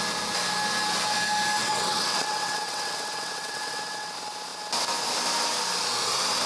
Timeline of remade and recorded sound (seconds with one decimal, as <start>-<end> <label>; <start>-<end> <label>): 0.0-1.6 recorded; 1.6-4.1 remade; 4.1-6.5 recorded